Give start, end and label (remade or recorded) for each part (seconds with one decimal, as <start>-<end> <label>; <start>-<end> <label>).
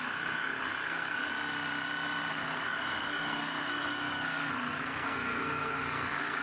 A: 0.0-1.3 remade; 1.3-2.3 recorded; 2.3-6.4 remade